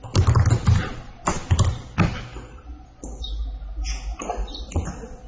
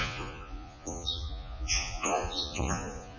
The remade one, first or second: second